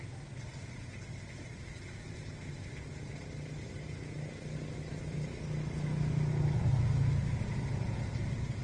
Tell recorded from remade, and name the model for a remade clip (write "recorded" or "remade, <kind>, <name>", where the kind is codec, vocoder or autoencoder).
recorded